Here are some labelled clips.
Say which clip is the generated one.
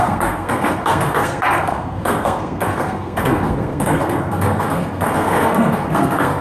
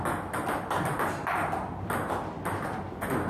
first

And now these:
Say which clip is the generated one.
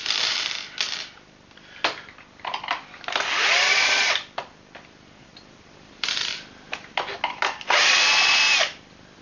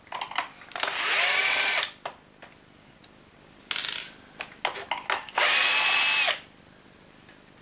first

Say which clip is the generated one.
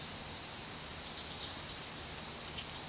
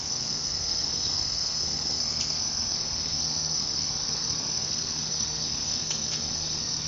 second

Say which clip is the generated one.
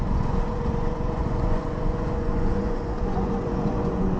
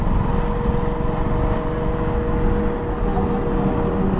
first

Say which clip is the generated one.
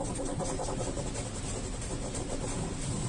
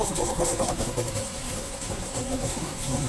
second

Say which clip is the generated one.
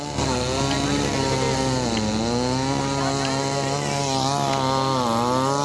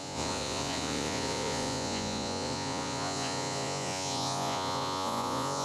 second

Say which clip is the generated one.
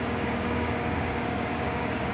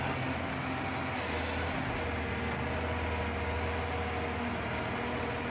first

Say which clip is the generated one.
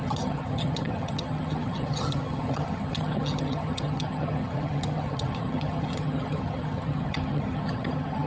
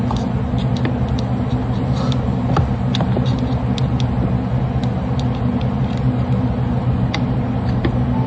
first